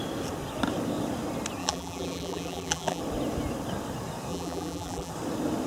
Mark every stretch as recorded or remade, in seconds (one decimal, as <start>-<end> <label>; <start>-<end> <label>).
0.0-1.6 recorded; 1.6-3.0 remade; 3.0-4.3 recorded; 4.3-5.1 remade; 5.1-5.7 recorded

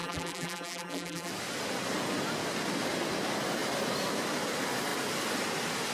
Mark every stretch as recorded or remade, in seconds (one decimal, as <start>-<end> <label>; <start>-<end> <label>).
0.0-1.3 remade; 1.3-5.9 recorded

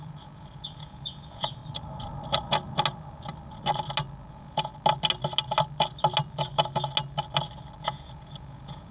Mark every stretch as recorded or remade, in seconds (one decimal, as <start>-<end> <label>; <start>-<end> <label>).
0.0-1.6 remade; 1.6-4.3 recorded; 4.3-4.7 remade; 4.7-7.8 recorded; 7.8-8.9 remade

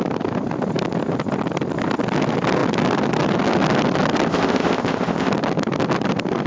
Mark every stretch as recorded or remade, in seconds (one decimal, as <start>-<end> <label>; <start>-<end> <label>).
0.0-4.3 recorded; 4.3-5.3 remade; 5.3-6.5 recorded